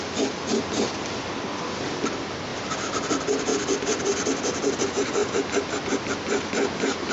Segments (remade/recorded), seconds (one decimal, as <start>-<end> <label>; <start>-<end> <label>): 0.0-3.5 recorded; 3.5-4.8 remade; 4.8-7.1 recorded